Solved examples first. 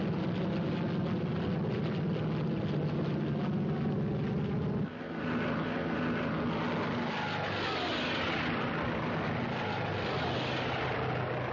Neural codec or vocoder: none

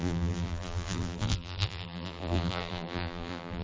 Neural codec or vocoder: vocoder, BigVGAN v2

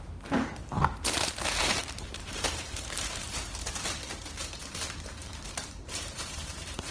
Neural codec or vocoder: vocoder, BigVGAN v2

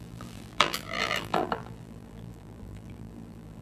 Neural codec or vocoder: vocoder, BigVGAN v2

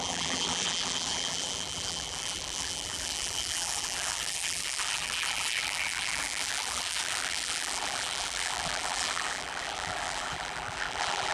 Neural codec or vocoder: vocoder, BigVGAN v2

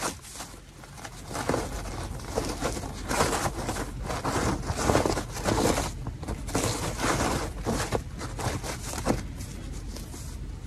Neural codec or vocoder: none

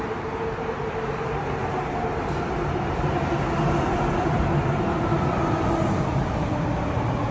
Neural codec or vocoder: none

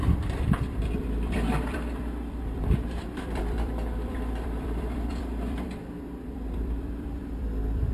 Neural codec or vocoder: vocoder, BigVGAN v2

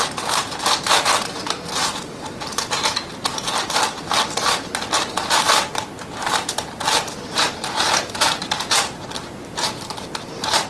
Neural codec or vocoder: vocoder, BigVGAN v2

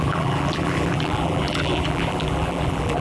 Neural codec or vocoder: vocoder, BigVGAN v2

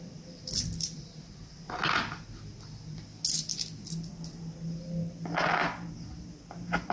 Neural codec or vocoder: none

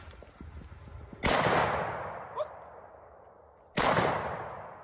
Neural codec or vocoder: none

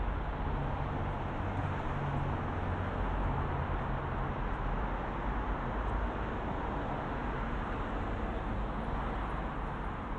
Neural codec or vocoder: none